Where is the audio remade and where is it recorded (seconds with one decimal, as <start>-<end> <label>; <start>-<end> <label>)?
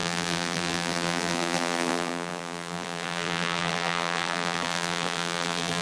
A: 0.0-5.8 remade